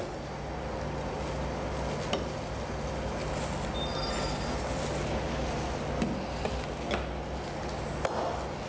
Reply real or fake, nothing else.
real